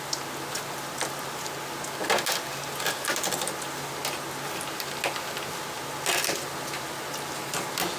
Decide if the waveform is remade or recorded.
recorded